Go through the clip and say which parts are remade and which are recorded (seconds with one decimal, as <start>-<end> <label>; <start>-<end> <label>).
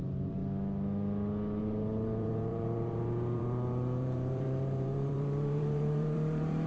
0.0-0.4 remade; 0.4-1.6 recorded; 1.6-6.7 remade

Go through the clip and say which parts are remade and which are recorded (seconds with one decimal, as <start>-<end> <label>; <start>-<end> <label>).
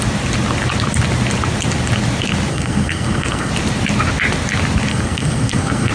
0.0-2.5 recorded; 2.5-3.5 remade; 3.5-4.9 recorded; 4.9-5.9 remade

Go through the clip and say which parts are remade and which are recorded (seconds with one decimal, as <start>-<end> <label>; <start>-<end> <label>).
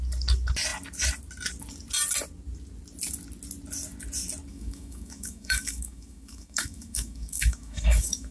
0.0-4.5 recorded; 4.5-8.3 remade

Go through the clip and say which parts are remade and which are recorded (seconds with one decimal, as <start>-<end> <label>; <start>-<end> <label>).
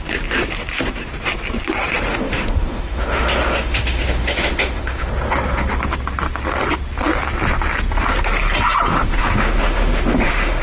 0.0-2.1 recorded; 2.1-5.1 remade; 5.1-8.9 recorded; 8.9-10.6 remade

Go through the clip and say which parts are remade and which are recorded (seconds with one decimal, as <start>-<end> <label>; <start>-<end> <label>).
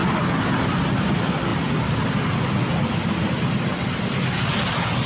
0.0-5.1 recorded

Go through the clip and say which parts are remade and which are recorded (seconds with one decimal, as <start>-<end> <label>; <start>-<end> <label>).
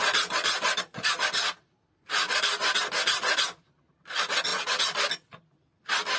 0.0-6.2 recorded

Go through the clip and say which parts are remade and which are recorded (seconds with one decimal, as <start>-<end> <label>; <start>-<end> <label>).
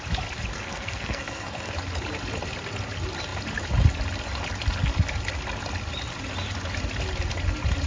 0.0-0.5 recorded; 0.5-1.7 remade; 1.7-7.9 recorded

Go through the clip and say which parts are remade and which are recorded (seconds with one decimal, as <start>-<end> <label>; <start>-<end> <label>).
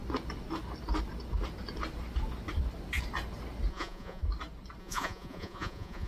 0.0-3.7 recorded; 3.7-4.2 remade; 4.2-4.8 recorded; 4.8-6.1 remade